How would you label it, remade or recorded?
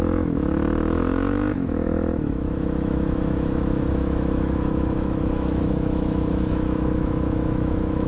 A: remade